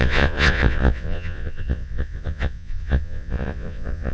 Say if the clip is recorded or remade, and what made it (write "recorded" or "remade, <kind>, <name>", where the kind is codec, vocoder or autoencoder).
remade, vocoder, Vocos